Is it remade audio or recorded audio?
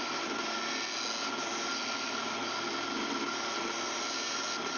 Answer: recorded